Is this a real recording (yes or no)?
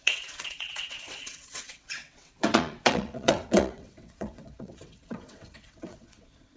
no